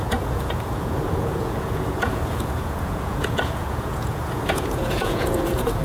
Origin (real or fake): fake